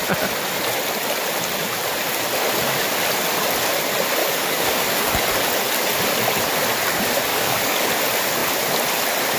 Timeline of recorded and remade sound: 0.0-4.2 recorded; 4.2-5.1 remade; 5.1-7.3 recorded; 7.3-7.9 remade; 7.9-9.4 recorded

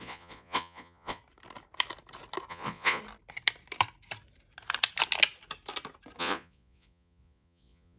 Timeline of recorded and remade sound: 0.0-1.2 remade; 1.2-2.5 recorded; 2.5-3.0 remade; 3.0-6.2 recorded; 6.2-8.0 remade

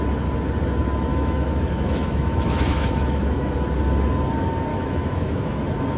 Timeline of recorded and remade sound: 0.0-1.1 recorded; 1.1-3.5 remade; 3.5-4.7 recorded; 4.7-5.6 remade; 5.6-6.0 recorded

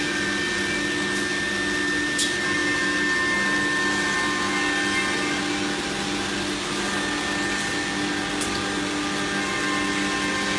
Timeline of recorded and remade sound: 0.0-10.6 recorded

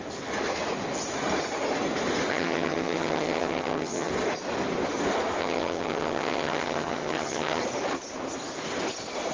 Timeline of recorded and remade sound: 0.0-2.3 recorded; 2.3-4.1 remade; 4.1-5.4 recorded; 5.4-7.6 remade; 7.6-9.3 recorded

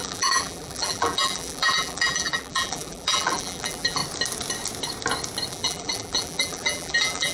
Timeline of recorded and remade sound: 0.0-4.0 remade; 4.0-5.5 recorded; 5.5-7.3 remade